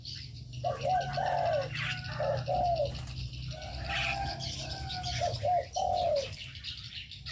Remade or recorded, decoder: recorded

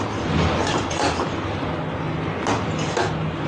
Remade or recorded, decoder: recorded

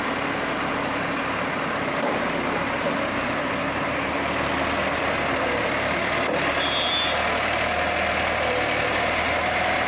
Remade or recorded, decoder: recorded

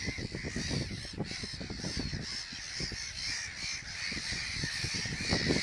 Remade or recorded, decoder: recorded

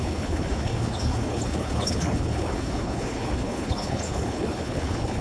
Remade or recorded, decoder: remade, codec, HILCodec